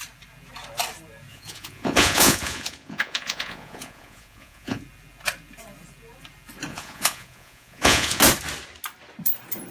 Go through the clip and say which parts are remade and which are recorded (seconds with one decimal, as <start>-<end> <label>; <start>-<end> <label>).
0.0-1.3 recorded; 1.3-4.8 remade; 4.8-6.7 recorded; 6.7-8.2 remade; 8.2-9.7 recorded